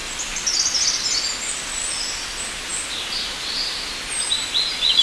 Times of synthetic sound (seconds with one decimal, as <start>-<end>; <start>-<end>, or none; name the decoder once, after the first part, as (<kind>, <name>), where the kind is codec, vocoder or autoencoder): none

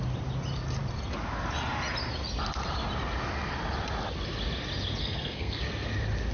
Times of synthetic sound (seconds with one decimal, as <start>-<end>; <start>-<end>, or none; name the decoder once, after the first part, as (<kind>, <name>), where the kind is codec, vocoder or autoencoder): 5.0-5.6 (codec, SNAC)

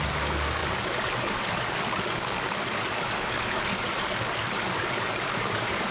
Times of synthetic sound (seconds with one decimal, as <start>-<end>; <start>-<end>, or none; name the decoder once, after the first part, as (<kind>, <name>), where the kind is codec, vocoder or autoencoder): 0.0-5.9 (codec, DAC)

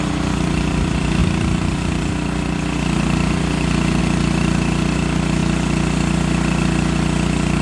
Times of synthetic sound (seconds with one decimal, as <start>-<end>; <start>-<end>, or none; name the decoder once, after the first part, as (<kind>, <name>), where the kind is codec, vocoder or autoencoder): none

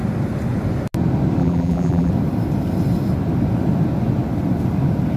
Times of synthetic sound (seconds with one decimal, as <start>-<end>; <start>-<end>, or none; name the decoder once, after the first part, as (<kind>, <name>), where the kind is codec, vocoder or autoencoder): 1.4-2.1 (vocoder, BigVGAN v2)

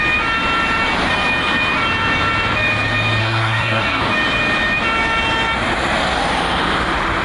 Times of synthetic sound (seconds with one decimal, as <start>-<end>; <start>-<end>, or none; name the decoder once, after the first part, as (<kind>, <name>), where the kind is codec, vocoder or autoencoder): 3.2-4.0 (codec, SNAC)